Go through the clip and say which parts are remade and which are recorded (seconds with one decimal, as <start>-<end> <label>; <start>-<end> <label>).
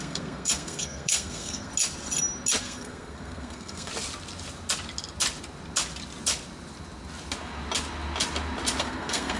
0.0-1.7 remade; 1.7-2.6 recorded; 2.6-3.9 remade; 3.9-8.8 recorded; 8.8-9.4 remade